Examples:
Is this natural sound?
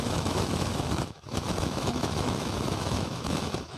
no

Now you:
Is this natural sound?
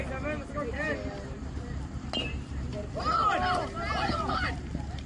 yes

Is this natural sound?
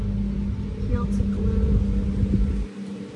yes